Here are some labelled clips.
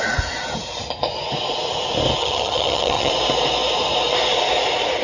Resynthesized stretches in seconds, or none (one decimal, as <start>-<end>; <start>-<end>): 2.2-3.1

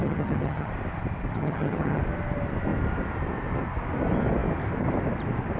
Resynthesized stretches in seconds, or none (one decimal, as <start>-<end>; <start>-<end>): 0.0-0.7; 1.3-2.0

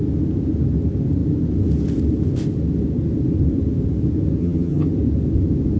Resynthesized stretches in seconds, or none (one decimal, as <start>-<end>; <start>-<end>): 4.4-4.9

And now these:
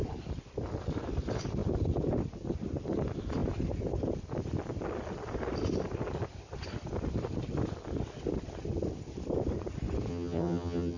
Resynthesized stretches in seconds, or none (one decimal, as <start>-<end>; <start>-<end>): 10.1-11.0

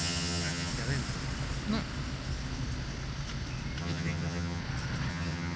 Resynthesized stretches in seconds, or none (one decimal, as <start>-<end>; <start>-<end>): 0.0-0.7; 3.8-4.6; 5.1-5.6

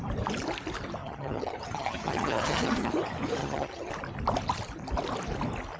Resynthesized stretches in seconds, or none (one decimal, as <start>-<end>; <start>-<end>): 1.0-2.9; 3.4-3.9